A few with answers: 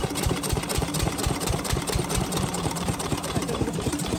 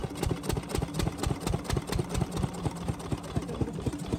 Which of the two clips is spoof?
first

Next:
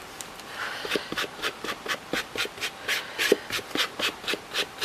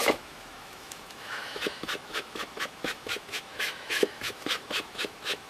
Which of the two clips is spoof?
second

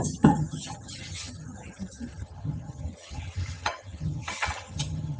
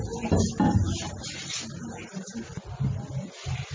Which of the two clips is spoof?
first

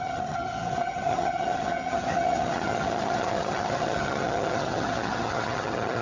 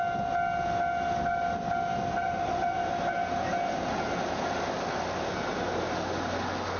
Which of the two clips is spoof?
first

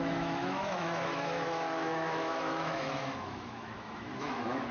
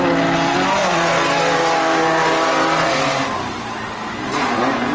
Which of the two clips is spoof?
first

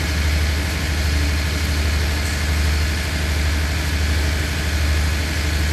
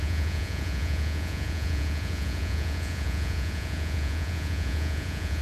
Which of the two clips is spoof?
second